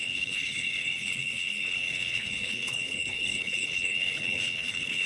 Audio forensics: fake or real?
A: fake